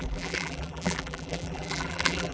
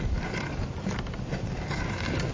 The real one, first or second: second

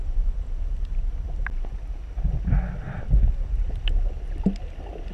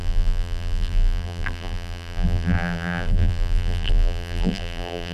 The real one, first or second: first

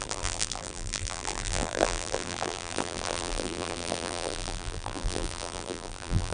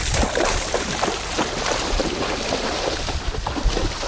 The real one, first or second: second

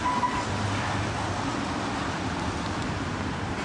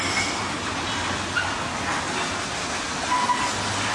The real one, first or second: second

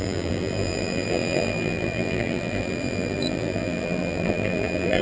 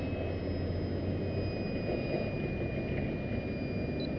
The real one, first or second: second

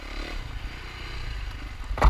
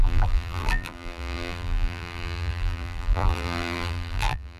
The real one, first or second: first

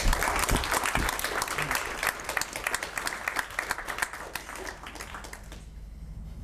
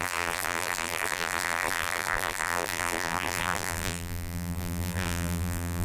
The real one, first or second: first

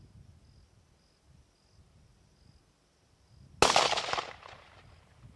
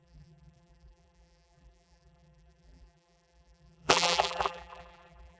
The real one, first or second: first